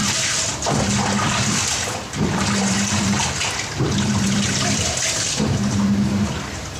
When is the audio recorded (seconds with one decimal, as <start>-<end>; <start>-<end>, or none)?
none